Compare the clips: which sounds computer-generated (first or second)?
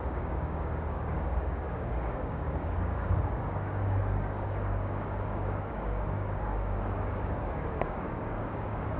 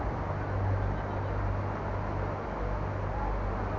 first